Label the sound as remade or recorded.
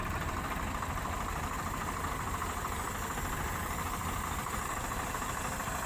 remade